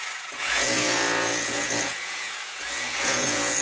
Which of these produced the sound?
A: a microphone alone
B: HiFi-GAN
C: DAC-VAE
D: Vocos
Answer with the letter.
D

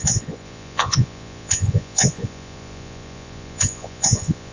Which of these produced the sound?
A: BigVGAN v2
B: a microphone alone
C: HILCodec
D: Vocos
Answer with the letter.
D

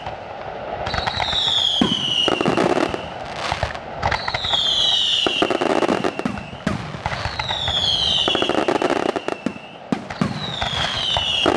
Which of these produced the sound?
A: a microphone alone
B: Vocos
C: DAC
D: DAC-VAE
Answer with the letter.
A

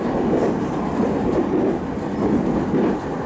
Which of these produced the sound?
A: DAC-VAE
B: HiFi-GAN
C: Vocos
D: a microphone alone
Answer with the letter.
D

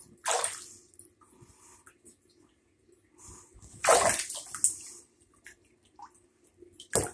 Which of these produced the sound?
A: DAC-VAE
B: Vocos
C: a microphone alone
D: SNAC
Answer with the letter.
C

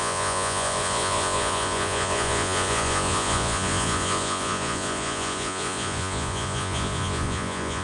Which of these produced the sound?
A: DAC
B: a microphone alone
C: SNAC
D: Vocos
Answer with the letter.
D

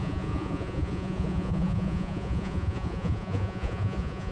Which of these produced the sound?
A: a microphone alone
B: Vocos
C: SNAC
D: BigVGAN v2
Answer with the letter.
B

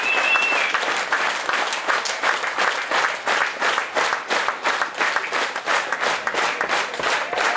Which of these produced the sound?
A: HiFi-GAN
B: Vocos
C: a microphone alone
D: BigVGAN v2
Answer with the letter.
C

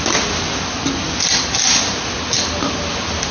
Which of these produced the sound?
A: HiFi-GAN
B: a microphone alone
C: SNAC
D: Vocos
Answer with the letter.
B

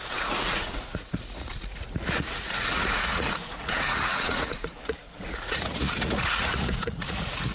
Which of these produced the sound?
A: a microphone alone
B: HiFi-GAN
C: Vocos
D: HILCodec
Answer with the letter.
C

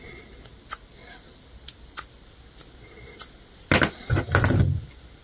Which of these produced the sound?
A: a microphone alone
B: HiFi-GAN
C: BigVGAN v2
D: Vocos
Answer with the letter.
A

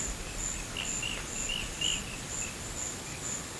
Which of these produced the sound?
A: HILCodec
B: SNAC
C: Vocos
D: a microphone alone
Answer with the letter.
D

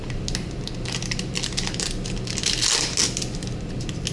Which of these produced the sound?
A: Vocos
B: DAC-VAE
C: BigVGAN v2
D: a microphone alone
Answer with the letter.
D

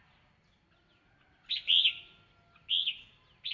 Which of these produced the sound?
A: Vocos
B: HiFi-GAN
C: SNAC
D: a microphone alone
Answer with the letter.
D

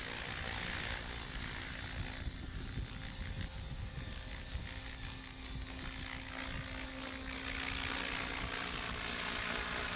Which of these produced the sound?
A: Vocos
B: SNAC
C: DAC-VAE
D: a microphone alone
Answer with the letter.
D